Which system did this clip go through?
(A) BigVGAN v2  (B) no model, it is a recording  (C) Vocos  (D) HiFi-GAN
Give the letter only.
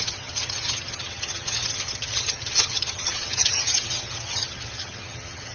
D